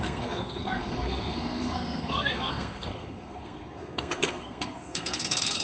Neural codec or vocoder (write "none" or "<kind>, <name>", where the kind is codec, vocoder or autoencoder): codec, SNAC